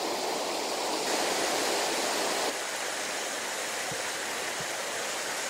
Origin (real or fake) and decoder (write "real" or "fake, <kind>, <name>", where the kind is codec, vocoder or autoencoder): real